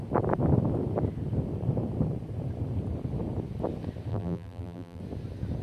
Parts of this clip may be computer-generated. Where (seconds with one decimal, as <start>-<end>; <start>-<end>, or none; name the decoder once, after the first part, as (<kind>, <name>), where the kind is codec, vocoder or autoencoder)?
4.1-5.0 (vocoder, BigVGAN v2)